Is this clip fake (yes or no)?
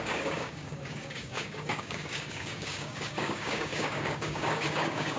yes